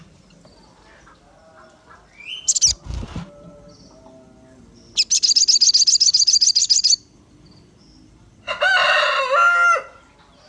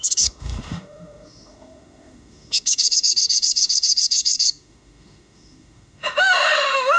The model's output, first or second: second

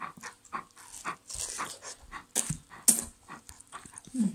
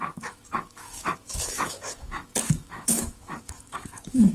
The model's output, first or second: second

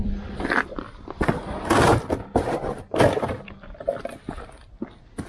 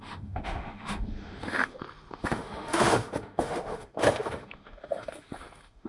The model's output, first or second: second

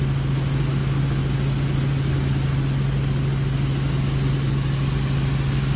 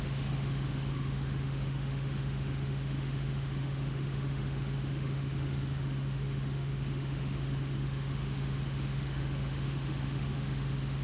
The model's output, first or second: second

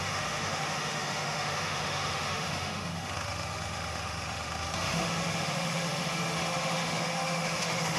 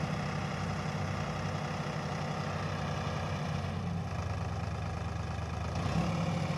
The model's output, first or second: first